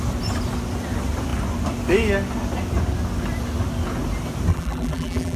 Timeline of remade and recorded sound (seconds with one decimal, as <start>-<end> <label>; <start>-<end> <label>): 0.0-4.5 recorded; 4.5-5.4 remade